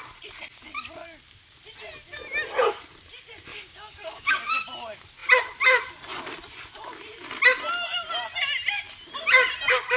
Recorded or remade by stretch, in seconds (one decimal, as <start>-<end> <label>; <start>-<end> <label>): 0.0-3.5 recorded; 3.5-4.5 remade; 4.5-10.0 recorded